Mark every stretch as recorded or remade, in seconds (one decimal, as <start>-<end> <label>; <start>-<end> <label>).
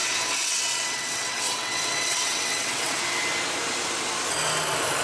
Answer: 0.0-3.0 remade; 3.0-5.0 recorded